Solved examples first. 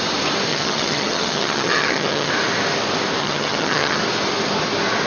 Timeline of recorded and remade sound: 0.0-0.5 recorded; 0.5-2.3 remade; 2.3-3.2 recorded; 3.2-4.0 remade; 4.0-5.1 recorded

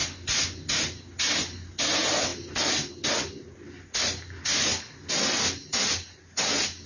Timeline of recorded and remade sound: 0.0-6.9 recorded

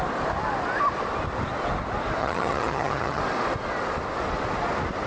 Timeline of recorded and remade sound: 0.0-2.2 recorded; 2.2-3.2 remade; 3.2-5.1 recorded